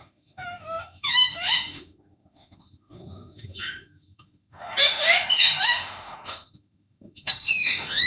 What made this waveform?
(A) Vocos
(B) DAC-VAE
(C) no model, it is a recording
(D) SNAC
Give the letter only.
B